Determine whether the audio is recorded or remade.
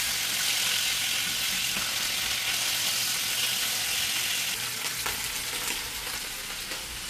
recorded